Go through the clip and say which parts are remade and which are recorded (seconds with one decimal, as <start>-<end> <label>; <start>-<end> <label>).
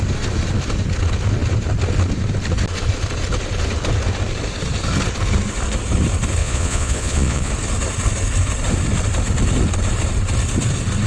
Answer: 0.0-6.4 recorded; 6.4-7.5 remade; 7.5-11.1 recorded